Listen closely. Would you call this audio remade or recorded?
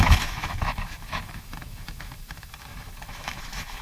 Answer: remade